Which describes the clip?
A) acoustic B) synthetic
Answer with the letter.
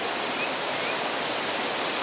A